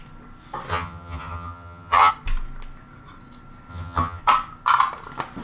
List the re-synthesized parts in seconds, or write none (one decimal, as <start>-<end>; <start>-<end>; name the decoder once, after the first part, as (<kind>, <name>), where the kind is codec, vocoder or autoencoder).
0.7-2.1 (vocoder, HiFi-GAN); 3.7-4.2